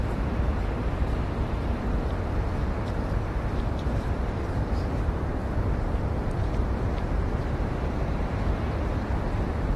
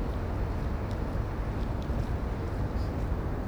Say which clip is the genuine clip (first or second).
second